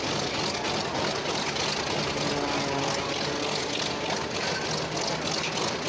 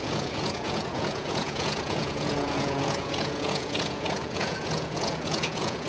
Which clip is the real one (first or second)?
first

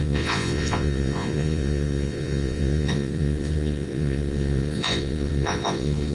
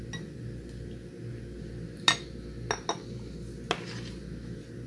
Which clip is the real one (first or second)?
second